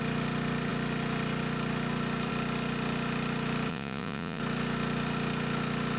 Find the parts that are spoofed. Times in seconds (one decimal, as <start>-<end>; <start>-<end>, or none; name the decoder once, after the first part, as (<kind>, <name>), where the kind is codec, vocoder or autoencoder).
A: 3.7-4.4 (vocoder, Vocos)